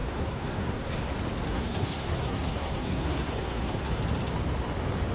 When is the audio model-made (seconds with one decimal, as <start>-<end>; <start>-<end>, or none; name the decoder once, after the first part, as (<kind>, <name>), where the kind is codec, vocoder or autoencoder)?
0.0-1.1 (codec, SNAC); 1.5-4.0